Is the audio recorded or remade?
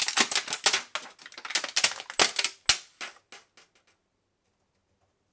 recorded